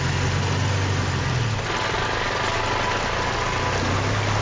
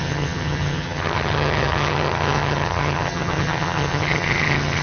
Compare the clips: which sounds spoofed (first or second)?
second